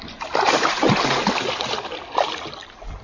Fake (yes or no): no